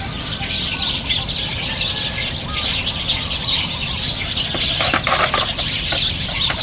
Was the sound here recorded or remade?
recorded